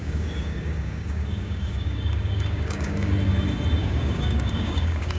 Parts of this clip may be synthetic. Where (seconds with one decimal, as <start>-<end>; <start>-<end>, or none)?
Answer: 0.0-3.1; 3.8-5.2